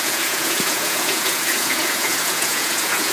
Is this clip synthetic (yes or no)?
yes